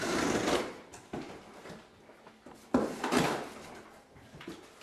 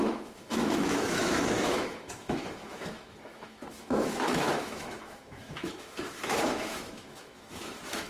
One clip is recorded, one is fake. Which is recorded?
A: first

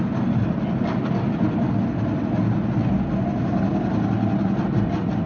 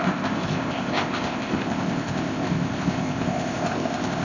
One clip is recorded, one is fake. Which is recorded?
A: first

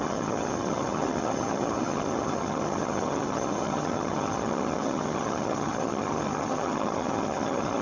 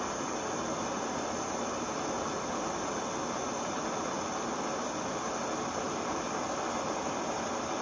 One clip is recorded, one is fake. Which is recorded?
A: second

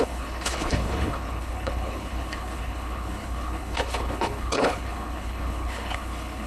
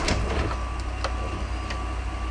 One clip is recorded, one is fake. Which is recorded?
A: second